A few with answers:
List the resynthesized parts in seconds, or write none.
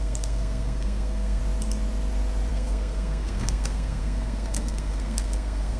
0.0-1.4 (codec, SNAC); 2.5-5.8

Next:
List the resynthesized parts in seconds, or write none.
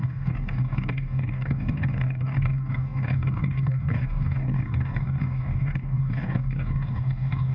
0.0-7.5 (codec, DAC)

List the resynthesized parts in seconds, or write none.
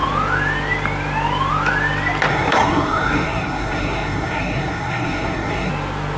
2.3-5.7 (codec, SNAC)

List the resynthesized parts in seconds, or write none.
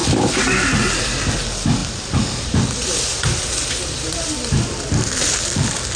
0.0-1.3 (vocoder, BigVGAN v2); 1.8-5.4